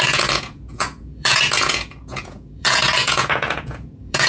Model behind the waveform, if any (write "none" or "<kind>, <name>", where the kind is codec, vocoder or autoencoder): vocoder, Vocos